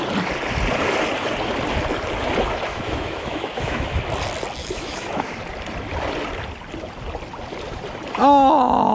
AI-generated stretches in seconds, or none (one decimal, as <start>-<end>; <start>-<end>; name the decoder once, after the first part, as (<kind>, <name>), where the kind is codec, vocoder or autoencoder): 2.7-4.0 (autoencoder, DAC-VAE); 4.6-5.4